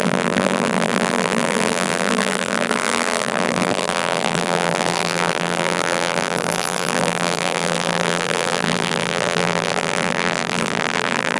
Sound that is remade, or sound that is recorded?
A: remade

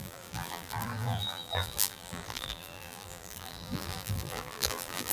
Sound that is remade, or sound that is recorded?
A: remade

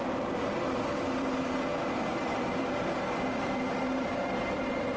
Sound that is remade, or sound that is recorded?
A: remade